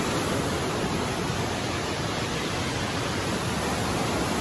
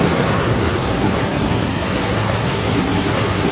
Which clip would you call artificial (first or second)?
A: second